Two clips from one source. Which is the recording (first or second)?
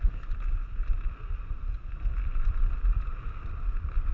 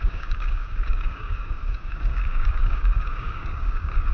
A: first